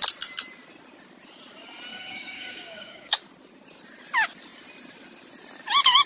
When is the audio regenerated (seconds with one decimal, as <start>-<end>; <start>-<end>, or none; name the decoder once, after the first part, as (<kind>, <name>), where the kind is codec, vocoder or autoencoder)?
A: 1.9-3.2 (codec, DAC)